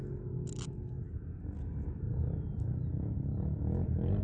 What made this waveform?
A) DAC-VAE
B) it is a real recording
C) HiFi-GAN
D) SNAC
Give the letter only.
B